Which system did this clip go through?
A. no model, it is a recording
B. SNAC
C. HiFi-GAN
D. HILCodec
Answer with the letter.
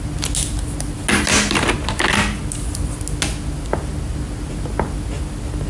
A